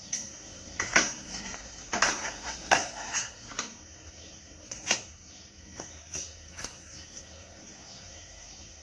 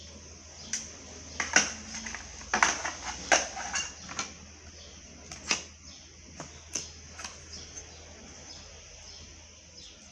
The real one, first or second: second